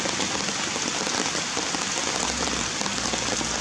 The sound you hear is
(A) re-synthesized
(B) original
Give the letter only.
B